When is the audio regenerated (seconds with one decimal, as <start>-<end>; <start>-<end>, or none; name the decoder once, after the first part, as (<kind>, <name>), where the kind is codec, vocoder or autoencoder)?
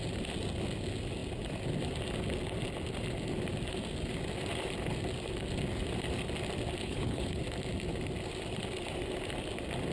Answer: 6.8-7.4 (codec, HILCodec)